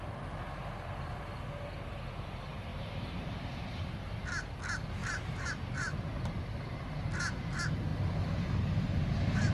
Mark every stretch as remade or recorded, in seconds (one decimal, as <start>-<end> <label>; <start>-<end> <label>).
0.0-2.7 recorded; 2.7-4.1 remade; 4.1-5.0 recorded; 5.0-6.1 remade; 6.1-7.9 recorded; 7.9-8.9 remade; 8.9-9.5 recorded